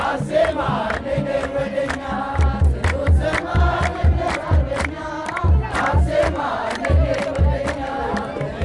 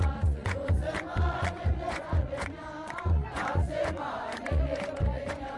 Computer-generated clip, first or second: second